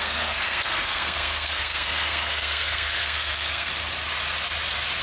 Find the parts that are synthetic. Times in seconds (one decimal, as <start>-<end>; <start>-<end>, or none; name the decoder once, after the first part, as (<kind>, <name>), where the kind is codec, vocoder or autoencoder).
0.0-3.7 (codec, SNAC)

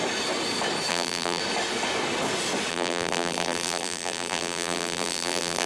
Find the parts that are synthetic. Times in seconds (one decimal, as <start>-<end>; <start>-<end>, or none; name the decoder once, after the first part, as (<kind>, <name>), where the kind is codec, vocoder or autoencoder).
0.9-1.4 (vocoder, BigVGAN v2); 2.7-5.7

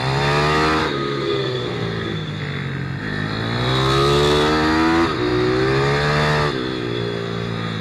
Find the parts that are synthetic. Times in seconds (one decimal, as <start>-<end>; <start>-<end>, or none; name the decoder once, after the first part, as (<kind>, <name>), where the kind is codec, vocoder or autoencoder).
0.8-2.4 (codec, SNAC)